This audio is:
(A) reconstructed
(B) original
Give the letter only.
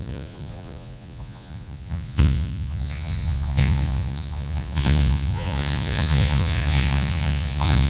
A